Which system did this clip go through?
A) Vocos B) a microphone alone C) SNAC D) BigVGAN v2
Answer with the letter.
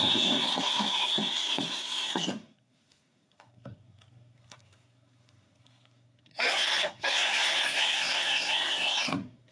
C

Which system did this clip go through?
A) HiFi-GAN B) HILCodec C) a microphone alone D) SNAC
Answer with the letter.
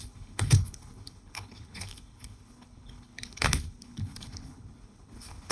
B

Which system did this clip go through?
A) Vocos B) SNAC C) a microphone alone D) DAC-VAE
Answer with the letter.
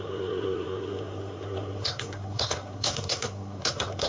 B